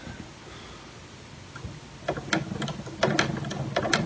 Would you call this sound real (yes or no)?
yes